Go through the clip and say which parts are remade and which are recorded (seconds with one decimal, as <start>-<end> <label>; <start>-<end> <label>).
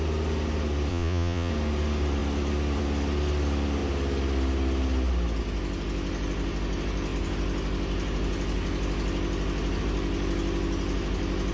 0.0-0.9 recorded; 0.9-1.5 remade; 1.5-11.5 recorded